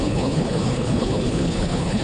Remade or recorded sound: remade